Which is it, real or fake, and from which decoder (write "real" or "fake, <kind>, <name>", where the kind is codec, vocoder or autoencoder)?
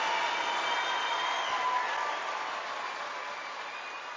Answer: real